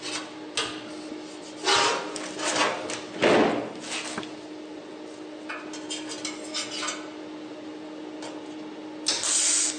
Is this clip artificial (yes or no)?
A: no